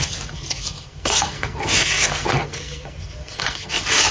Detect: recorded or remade remade